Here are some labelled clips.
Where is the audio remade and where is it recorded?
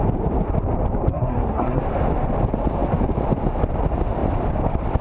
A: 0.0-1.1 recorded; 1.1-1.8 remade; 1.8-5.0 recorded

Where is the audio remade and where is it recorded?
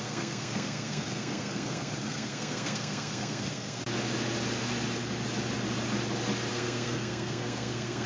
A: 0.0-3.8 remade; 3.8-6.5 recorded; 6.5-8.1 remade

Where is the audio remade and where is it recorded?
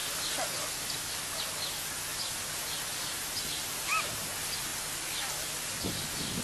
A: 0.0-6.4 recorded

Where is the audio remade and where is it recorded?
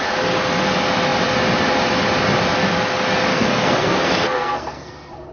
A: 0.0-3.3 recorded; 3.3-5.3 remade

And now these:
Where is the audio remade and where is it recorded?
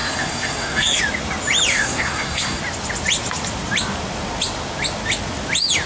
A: 0.0-1.0 remade; 1.0-1.7 recorded; 1.7-2.6 remade; 2.6-5.9 recorded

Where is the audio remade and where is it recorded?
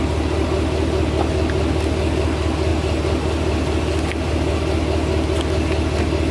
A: 0.0-6.3 recorded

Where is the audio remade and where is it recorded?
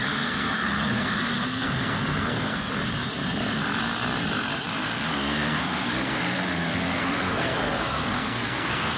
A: 0.0-2.7 remade; 2.7-5.1 recorded; 5.1-9.0 remade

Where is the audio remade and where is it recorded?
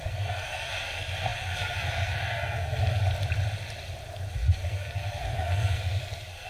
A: 0.0-3.0 remade; 3.0-4.3 recorded; 4.3-6.5 remade